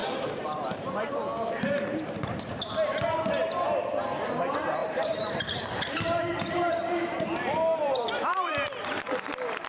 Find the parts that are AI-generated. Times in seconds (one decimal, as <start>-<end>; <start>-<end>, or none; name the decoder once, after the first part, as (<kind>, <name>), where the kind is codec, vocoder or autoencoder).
0.0-3.3 (vocoder, BigVGAN v2); 4.8-9.7